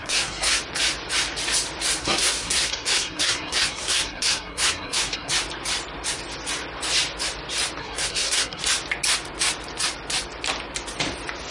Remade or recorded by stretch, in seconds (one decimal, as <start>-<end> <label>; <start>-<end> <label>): 0.0-0.6 remade; 0.6-2.0 recorded; 2.0-5.3 remade; 5.3-7.8 recorded; 7.8-8.6 remade; 8.6-11.5 recorded